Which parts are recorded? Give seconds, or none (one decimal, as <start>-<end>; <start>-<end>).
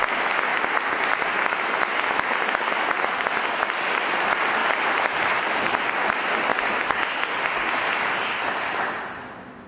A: 0.0-0.5; 1.4-4.6; 5.4-6.5; 7.2-9.7